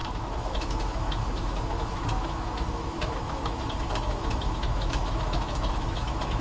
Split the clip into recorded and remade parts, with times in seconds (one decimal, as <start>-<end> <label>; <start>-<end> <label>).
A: 0.0-6.4 remade